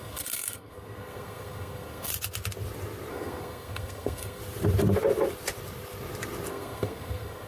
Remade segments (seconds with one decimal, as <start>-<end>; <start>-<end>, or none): 0.0-2.1; 3.1-4.4; 6.5-7.5